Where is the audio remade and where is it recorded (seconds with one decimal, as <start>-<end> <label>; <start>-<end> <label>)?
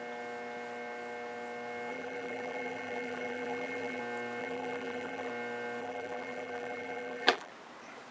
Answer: 0.0-1.9 recorded; 1.9-4.0 remade; 4.0-4.4 recorded; 4.4-5.3 remade; 5.3-5.8 recorded; 5.8-7.5 remade; 7.5-8.1 recorded